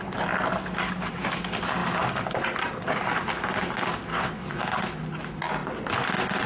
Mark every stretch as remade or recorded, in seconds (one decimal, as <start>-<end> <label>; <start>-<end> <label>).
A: 0.0-4.1 recorded; 4.1-4.6 remade; 4.6-6.5 recorded